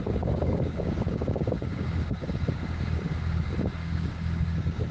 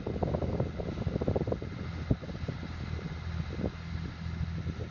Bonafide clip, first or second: second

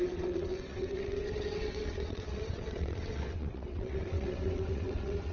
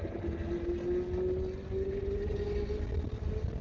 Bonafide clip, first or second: second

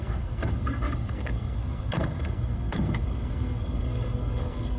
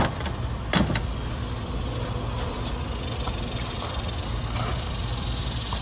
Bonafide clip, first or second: second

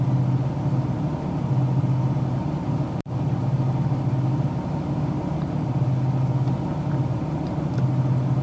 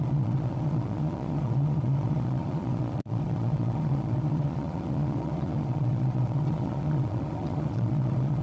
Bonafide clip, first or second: first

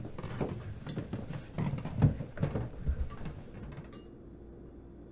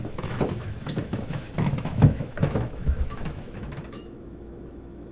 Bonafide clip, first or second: first